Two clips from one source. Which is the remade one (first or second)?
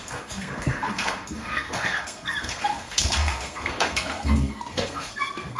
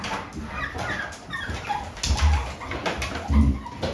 first